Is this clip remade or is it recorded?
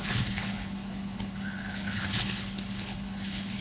remade